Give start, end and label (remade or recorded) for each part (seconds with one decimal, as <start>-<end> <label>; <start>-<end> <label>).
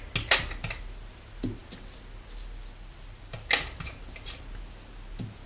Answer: 0.0-5.5 recorded